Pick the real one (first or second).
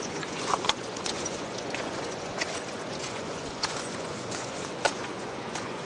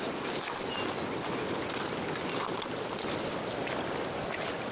second